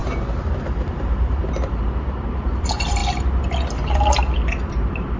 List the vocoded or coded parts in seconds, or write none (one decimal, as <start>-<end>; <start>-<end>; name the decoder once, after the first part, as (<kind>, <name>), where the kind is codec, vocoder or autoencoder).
0.0-3.0 (vocoder, BigVGAN v2); 4.7-5.2